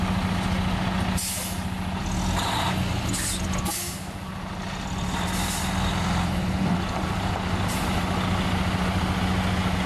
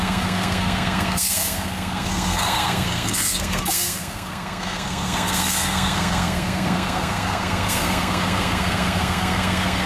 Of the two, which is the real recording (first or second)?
first